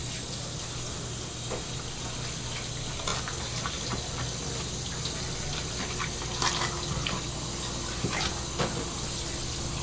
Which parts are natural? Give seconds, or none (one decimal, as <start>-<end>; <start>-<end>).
0.0-9.8